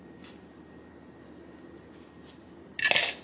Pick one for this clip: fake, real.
real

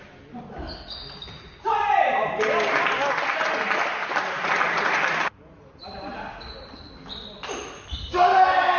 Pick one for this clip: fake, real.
real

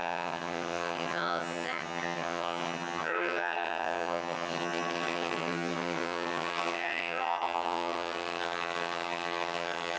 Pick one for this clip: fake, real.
fake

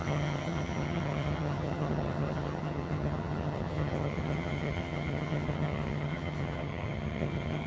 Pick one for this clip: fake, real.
fake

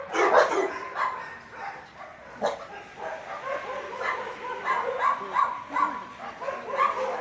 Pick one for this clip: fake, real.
real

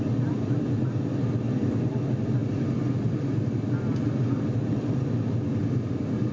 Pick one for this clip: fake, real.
real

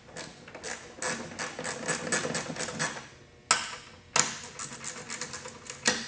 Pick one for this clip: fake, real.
real